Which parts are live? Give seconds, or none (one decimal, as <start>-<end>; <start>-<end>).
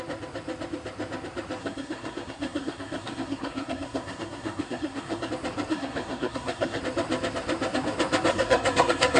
0.0-1.6; 5.3-5.7; 6.8-8.3